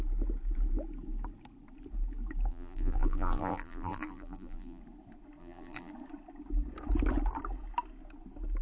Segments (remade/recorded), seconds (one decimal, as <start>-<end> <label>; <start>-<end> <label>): 0.0-2.5 recorded; 2.5-4.8 remade; 4.8-5.4 recorded; 5.4-5.9 remade; 5.9-8.6 recorded